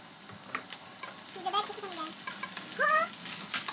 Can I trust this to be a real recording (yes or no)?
yes